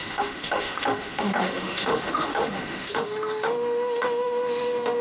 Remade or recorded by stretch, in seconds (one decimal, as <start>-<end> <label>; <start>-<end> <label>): 0.0-5.0 remade